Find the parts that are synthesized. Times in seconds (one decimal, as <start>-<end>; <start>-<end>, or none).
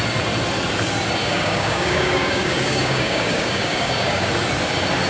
1.2-4.3